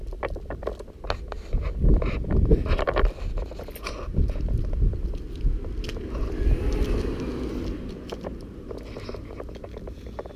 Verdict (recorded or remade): recorded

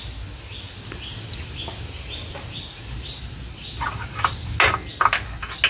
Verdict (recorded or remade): recorded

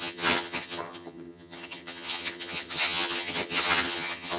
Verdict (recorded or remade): remade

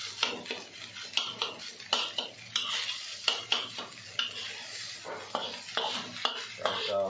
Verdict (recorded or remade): recorded